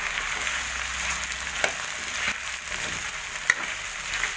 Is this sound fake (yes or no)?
no